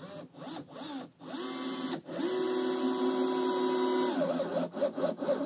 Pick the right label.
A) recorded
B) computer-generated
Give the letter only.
A